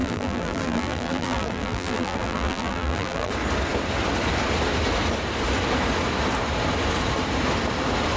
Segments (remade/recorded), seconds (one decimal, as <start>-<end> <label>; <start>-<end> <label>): 0.0-3.3 remade; 3.3-8.2 recorded

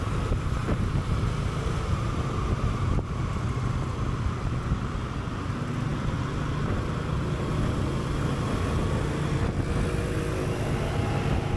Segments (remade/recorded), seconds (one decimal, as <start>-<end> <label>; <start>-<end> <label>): 0.0-0.6 recorded; 0.6-3.3 remade; 3.3-11.6 recorded

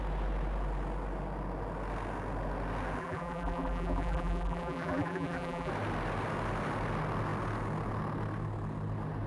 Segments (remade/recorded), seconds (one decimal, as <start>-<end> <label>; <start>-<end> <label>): 0.0-3.0 recorded; 3.0-5.7 remade; 5.7-9.3 recorded

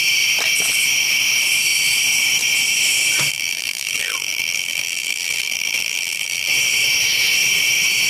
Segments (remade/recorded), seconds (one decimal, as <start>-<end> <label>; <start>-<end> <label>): 0.0-3.3 recorded; 3.3-6.5 remade; 6.5-8.1 recorded